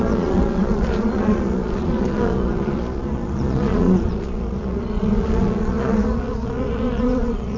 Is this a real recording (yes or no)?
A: no